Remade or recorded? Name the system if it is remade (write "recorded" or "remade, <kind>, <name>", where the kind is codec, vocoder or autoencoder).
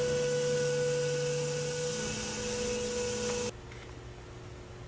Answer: recorded